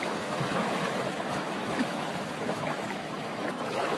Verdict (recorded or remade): remade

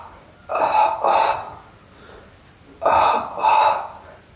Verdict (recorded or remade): recorded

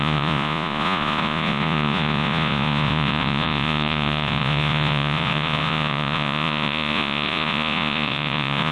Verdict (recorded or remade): remade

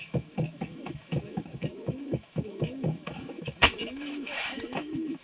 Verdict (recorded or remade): remade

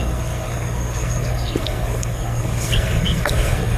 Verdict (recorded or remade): remade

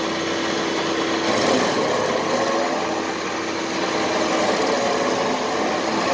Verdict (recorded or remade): recorded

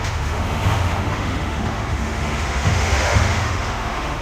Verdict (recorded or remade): remade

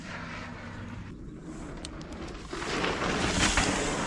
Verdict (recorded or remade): recorded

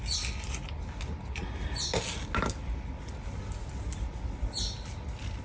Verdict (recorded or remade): recorded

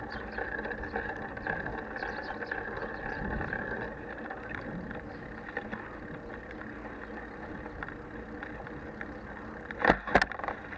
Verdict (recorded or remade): recorded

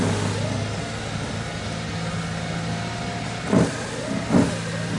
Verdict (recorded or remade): recorded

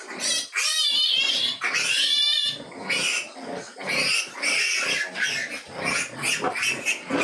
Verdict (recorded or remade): recorded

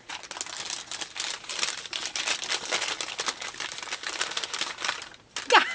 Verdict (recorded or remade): recorded